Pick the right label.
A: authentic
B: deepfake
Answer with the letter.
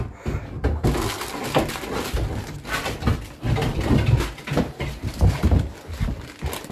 A